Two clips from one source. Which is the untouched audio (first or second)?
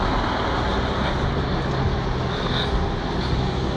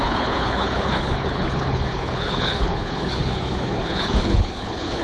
first